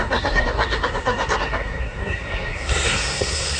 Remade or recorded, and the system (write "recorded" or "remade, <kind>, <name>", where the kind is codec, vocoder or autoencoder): remade, codec, SNAC